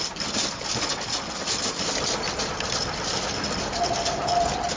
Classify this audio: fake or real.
real